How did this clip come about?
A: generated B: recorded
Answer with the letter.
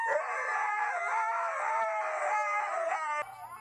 B